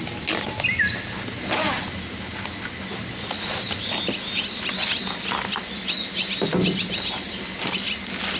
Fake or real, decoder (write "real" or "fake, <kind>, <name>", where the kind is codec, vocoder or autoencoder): real